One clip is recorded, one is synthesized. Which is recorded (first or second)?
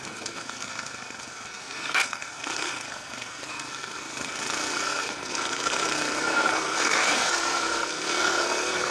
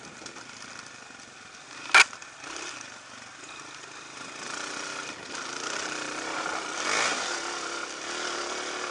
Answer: second